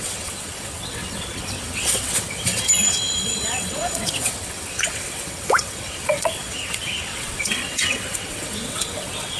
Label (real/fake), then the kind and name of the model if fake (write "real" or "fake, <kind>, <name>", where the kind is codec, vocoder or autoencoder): fake, vocoder, WaveNeXt